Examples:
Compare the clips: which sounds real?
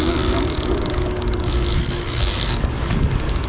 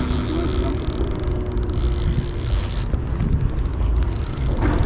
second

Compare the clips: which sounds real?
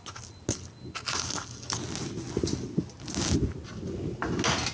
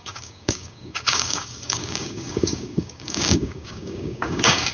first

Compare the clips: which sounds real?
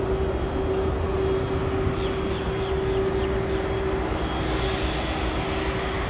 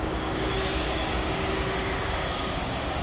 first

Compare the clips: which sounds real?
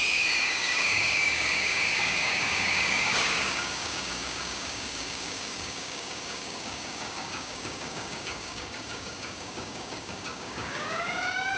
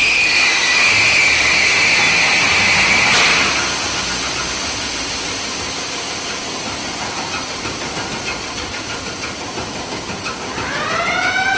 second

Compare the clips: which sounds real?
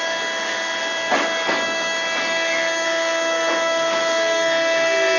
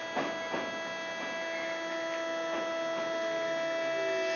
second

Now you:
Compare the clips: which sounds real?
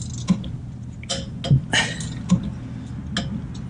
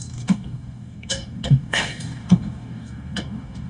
first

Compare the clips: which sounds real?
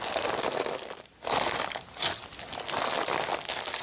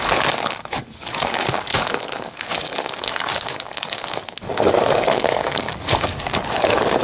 first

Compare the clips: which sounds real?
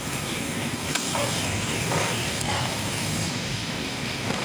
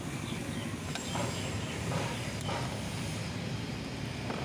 second